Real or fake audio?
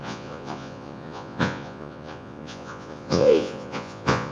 fake